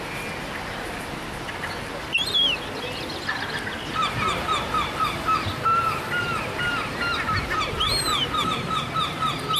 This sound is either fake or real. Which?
real